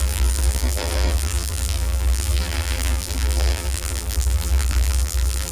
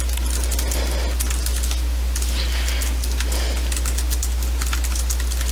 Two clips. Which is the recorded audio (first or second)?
second